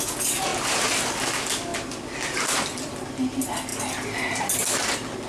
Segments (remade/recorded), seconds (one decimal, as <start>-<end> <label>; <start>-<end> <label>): 0.0-1.7 recorded; 1.7-3.0 remade; 3.0-3.7 recorded; 3.7-4.8 remade; 4.8-5.3 recorded